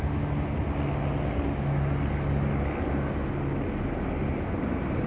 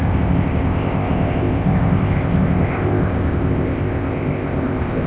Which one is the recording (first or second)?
first